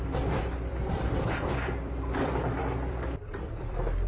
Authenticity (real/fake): fake